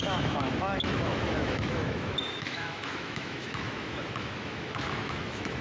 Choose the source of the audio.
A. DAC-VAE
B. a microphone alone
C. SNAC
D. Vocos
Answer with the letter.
A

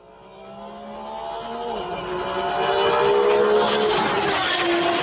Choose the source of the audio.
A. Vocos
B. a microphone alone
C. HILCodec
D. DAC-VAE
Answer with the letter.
B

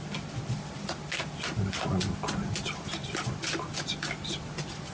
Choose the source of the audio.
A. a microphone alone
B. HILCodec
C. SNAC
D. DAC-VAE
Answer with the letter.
A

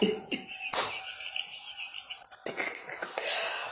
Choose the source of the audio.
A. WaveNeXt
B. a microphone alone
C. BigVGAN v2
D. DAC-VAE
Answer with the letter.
B